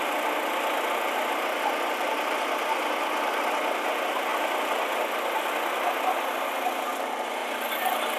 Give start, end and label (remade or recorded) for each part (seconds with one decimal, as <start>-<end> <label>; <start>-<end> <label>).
0.0-8.2 recorded